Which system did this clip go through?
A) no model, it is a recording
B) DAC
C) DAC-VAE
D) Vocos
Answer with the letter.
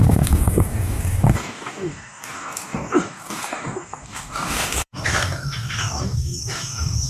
B